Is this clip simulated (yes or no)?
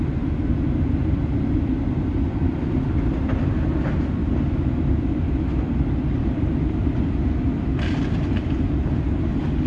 yes